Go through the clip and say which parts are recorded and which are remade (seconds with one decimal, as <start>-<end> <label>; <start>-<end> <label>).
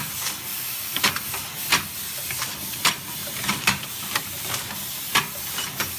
0.0-0.5 recorded; 0.5-1.1 remade; 1.1-3.2 recorded; 3.2-4.8 remade; 4.8-6.0 recorded